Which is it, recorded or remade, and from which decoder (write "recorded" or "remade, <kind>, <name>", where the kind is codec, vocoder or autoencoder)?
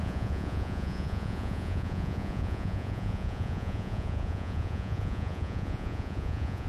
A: remade, vocoder, Vocos